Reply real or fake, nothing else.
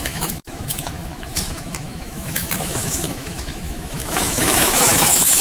fake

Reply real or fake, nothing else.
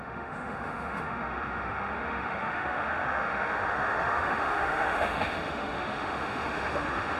fake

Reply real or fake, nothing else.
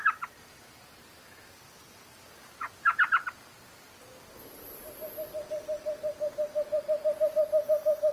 real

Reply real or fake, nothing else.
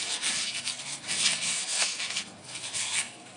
fake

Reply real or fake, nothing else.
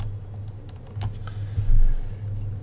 real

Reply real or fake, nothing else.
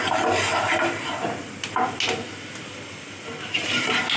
real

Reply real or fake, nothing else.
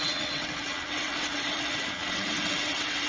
fake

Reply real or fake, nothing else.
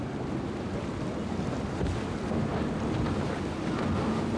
real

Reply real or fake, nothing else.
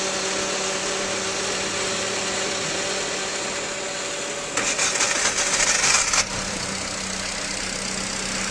real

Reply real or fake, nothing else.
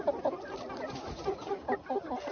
fake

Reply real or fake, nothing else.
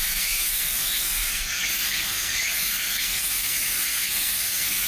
fake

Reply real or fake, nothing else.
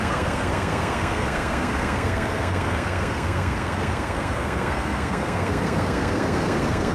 fake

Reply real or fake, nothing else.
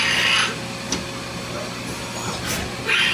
real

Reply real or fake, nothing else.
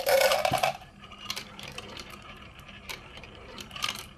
fake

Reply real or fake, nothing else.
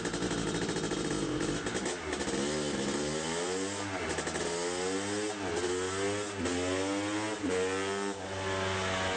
real